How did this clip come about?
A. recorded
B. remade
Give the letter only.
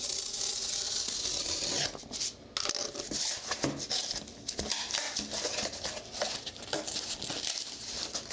A